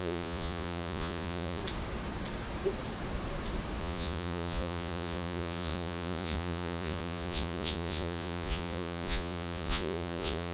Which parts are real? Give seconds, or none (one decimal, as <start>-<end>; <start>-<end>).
1.6-3.8